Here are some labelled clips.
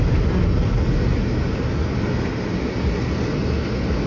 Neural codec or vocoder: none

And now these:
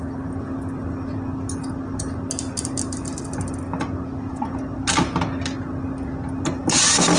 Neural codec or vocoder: none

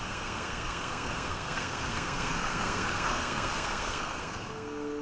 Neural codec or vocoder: codec, SNAC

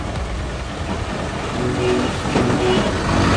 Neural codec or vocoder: none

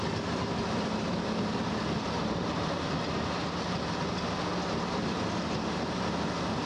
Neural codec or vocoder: none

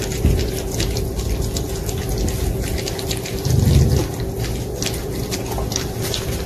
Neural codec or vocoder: none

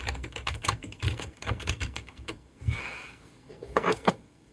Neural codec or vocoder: codec, SNAC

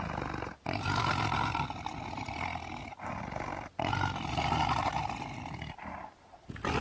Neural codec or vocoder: none